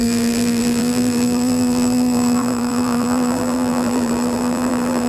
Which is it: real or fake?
fake